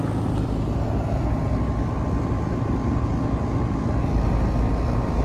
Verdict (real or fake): real